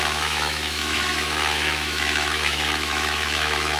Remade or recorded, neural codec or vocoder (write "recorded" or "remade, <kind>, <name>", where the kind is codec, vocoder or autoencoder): remade, autoencoder, DAC-VAE